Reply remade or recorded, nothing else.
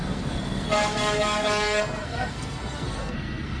remade